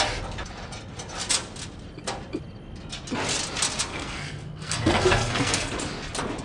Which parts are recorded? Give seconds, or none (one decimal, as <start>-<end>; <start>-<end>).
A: 0.0-3.9; 5.7-6.4